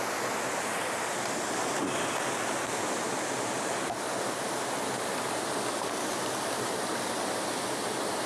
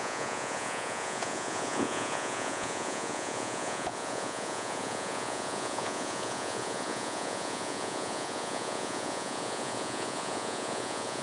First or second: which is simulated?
second